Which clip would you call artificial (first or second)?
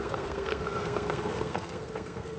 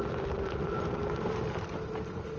first